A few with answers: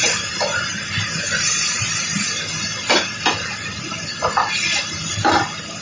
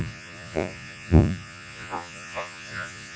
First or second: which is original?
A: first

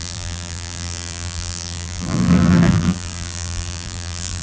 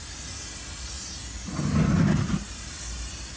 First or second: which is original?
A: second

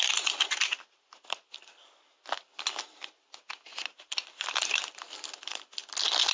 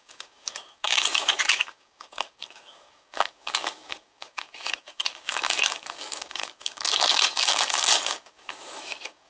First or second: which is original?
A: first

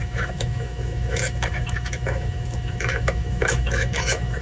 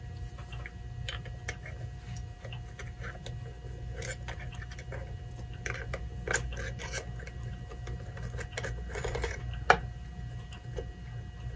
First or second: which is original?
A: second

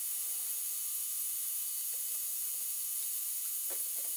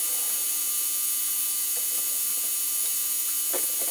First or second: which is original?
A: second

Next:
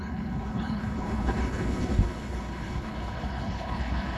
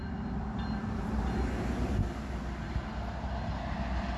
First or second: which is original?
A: second